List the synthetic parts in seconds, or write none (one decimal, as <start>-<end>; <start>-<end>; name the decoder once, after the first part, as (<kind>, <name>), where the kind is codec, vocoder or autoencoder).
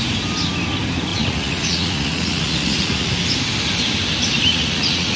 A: 1.1-3.1 (vocoder, Vocos); 4.5-5.2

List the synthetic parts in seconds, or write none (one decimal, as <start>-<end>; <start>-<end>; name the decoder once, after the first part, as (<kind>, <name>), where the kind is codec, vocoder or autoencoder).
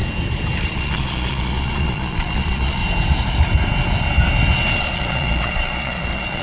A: 0.6-2.8 (vocoder, Vocos); 4.8-6.4